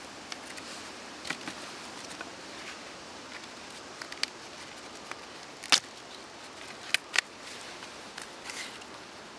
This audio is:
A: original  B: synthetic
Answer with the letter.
A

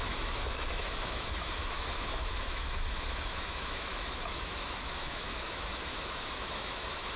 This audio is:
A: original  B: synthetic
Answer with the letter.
B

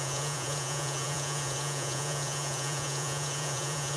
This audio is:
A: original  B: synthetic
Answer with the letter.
B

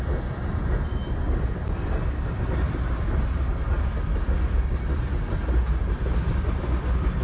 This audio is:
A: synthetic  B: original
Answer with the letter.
B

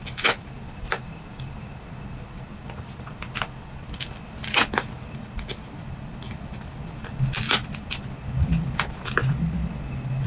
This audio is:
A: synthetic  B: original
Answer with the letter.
B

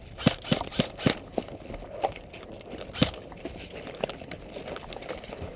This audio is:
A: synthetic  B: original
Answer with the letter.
B